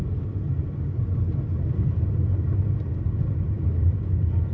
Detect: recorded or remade recorded